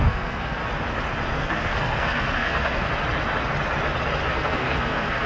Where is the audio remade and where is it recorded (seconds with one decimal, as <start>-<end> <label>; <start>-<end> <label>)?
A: 0.0-0.6 remade; 0.6-1.3 recorded; 1.3-2.9 remade; 2.9-4.3 recorded; 4.3-5.3 remade